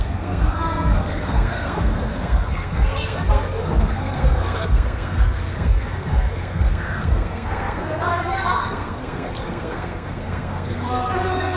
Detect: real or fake fake